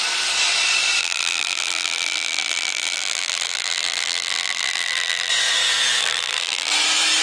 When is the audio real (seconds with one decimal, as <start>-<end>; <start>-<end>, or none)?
0.0-1.0; 5.3-6.0; 6.7-7.2